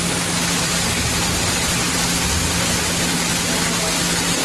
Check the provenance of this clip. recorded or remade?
recorded